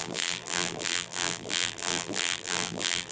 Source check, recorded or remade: remade